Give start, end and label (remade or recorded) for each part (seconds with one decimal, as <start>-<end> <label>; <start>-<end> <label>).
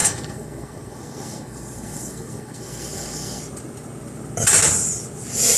0.0-3.4 remade; 3.4-5.6 recorded